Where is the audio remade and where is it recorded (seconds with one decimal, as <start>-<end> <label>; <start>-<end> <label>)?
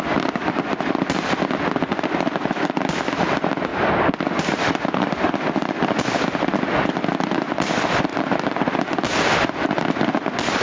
0.0-3.7 recorded; 3.7-8.0 remade; 8.0-10.6 recorded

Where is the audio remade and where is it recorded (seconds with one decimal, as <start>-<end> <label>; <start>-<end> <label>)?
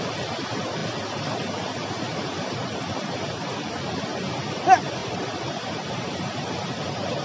0.0-5.0 recorded; 5.0-5.9 remade; 5.9-7.2 recorded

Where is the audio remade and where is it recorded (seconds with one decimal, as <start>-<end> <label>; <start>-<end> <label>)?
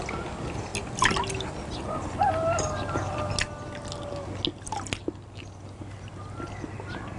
0.0-7.2 recorded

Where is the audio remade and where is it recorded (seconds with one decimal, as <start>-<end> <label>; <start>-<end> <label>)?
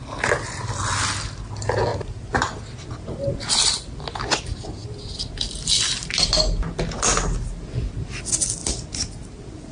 0.0-1.9 recorded; 1.9-2.6 remade; 2.6-9.7 recorded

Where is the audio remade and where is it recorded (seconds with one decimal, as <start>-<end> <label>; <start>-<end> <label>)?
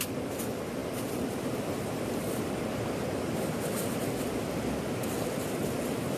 0.0-6.2 recorded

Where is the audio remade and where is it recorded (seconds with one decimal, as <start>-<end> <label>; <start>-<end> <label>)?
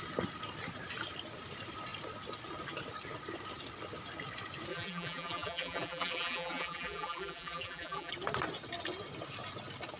0.0-4.7 recorded; 4.7-8.1 remade; 8.1-10.0 recorded